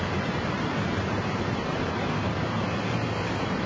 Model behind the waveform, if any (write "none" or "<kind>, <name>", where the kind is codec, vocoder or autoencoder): vocoder, BigVGAN v2